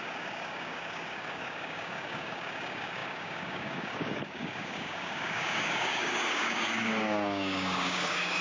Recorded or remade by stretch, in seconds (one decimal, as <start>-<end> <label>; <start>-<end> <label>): 0.0-8.4 remade